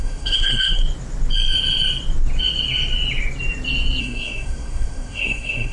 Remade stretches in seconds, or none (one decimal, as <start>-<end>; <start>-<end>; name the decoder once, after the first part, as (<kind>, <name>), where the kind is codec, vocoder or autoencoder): 0.0-0.8 (codec, SNAC); 4.0-5.7